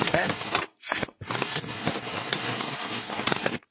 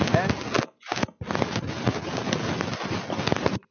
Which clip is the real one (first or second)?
second